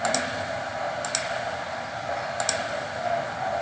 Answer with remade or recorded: recorded